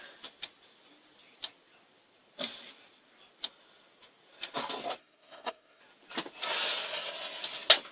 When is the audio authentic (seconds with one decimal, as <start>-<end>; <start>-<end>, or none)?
0.0-5.0; 5.8-7.9